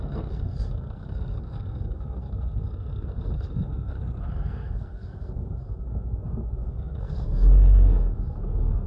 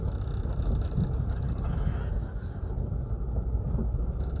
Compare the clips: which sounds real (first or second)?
second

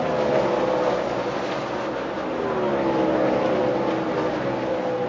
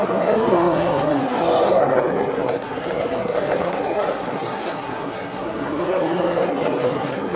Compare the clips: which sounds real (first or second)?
first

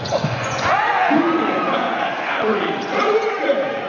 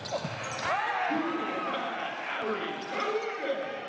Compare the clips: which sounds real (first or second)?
second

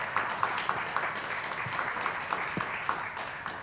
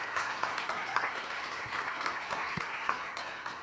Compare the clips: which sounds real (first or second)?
first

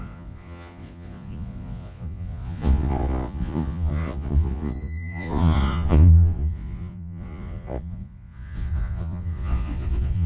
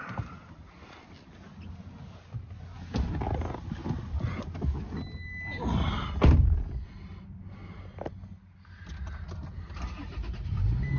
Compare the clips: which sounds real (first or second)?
second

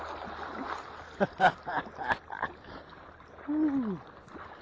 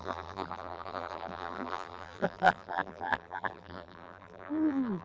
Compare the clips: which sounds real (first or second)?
first